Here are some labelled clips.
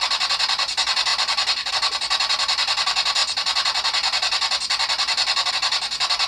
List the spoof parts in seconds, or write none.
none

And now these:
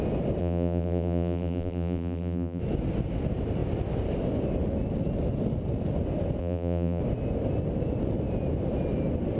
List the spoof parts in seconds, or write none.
0.4-2.6; 6.4-7.0

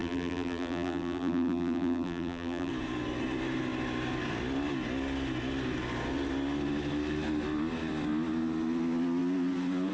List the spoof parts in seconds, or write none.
0.0-2.7

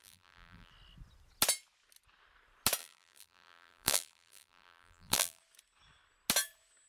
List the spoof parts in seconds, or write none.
0.0-0.7; 2.8-5.4

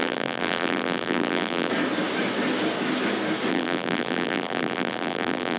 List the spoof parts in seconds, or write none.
0.0-1.7; 3.5-5.6